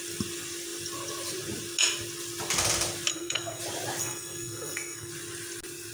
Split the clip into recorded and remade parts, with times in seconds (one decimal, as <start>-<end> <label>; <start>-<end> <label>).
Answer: 0.0-3.1 recorded; 3.1-3.6 remade; 3.6-4.0 recorded; 4.0-5.1 remade; 5.1-5.9 recorded